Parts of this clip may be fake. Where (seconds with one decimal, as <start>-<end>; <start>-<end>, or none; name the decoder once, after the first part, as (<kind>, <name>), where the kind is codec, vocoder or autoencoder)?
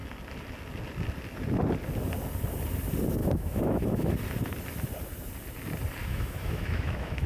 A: 3.2-4.1 (autoencoder, DAC-VAE); 6.0-7.3